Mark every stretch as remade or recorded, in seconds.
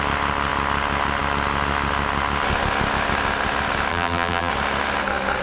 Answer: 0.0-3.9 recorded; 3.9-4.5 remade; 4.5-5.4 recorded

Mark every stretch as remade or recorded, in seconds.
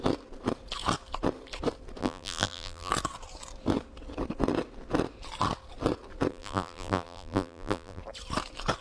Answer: 0.0-2.0 recorded; 2.0-2.9 remade; 2.9-6.3 recorded; 6.3-8.0 remade; 8.0-8.8 recorded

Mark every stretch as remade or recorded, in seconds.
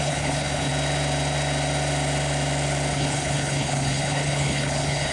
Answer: 0.0-0.7 remade; 0.7-2.9 recorded; 2.9-5.1 remade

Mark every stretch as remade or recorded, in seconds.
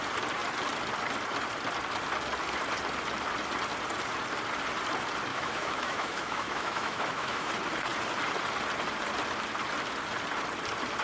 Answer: 0.0-5.3 recorded; 5.3-7.5 remade; 7.5-11.0 recorded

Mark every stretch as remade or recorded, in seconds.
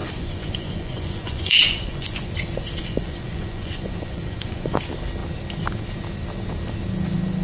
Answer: 0.0-2.3 remade; 2.3-2.8 recorded; 2.8-4.8 remade; 4.8-7.4 recorded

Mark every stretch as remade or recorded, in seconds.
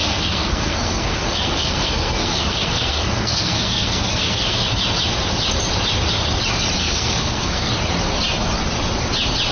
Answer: 0.0-4.8 remade; 4.8-6.8 recorded; 6.8-7.7 remade; 7.7-9.5 recorded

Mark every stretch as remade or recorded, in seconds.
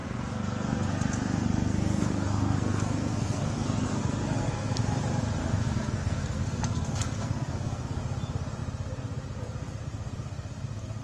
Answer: 0.0-4.8 remade; 4.8-5.4 recorded; 5.4-8.0 remade; 8.0-11.0 recorded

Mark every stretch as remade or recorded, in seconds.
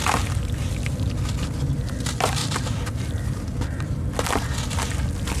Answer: 0.0-2.4 recorded; 2.4-4.4 remade; 4.4-5.4 recorded